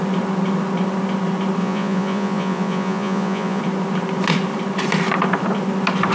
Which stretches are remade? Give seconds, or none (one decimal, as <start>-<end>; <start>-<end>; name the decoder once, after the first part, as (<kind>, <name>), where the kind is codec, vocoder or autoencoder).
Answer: 1.6-3.6 (vocoder, Vocos)